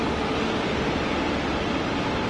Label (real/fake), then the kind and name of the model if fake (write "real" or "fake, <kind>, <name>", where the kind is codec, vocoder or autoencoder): real